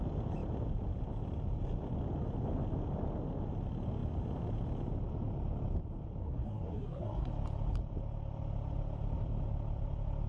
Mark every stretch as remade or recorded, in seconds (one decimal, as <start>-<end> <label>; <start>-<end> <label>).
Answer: 0.0-6.2 recorded; 6.2-7.3 remade; 7.3-10.3 recorded

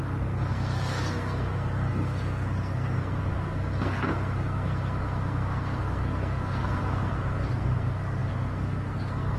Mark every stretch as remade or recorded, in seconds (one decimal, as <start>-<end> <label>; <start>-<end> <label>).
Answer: 0.0-9.4 remade

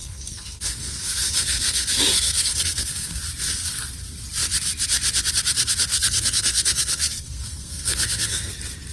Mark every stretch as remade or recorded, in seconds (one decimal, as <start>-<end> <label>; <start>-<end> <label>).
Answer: 0.0-3.2 remade; 3.2-5.9 recorded; 5.9-8.5 remade; 8.5-8.9 recorded

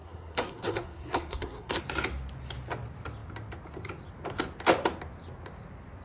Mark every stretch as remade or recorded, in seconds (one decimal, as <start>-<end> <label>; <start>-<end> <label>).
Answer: 0.0-1.8 remade; 1.8-6.0 recorded

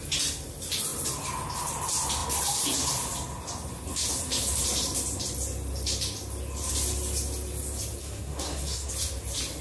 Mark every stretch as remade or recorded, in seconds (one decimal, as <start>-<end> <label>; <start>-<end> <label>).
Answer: 0.0-8.0 recorded; 8.0-8.9 remade; 8.9-9.6 recorded

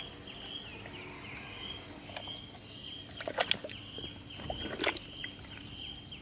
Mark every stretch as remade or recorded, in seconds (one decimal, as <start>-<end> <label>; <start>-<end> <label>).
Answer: 0.0-6.2 recorded